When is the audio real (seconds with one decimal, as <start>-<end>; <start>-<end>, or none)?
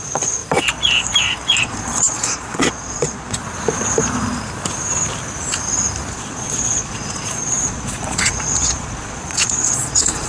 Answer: 0.4-1.6; 3.4-6.1